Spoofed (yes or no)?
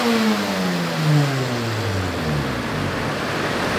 no